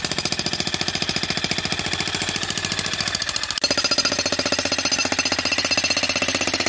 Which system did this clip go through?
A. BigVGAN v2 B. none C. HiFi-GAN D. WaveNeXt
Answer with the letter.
B